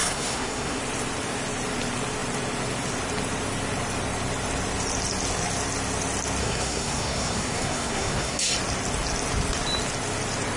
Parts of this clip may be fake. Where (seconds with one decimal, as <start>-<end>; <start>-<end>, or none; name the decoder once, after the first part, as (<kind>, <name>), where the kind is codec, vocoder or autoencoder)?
0.0-0.8 (codec, SNAC); 6.4-8.5

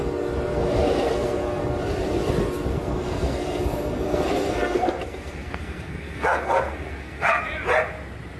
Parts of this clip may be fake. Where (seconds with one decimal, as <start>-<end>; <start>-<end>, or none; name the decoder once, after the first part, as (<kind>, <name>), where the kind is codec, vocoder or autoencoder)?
0.5-1.6 (codec, SNAC); 2.7-7.4

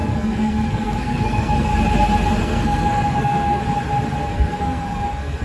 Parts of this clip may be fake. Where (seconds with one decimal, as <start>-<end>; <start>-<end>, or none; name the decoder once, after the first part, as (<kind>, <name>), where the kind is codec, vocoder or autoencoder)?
0.0-1.7 (codec, SNAC); 2.4-3.6; 4.3-5.4

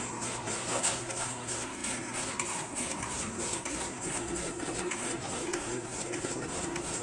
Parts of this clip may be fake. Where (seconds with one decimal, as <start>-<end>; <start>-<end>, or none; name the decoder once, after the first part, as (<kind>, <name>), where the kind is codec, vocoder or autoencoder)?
0.0-7.0 (codec, SNAC)

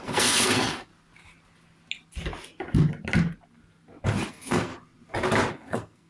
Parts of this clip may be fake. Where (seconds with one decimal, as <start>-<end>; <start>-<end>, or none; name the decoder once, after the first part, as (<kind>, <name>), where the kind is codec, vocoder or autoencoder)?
0.0-0.9 (codec, SNAC); 4.3-4.7; 5.5-6.1